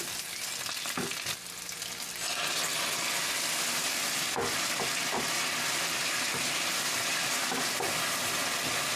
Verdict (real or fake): real